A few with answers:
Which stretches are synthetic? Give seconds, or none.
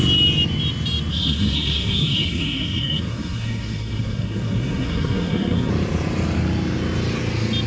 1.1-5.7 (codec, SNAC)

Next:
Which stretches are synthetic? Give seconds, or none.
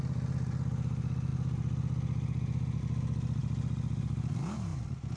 none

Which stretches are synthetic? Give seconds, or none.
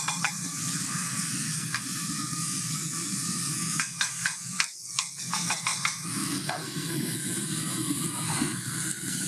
0.0-9.3 (codec, SNAC)